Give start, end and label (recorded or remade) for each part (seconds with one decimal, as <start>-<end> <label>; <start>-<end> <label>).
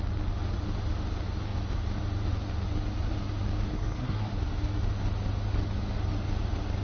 0.0-3.7 recorded; 3.7-4.3 remade; 4.3-6.8 recorded